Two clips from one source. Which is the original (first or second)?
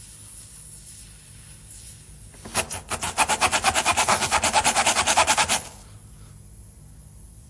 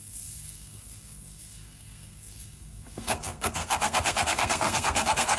first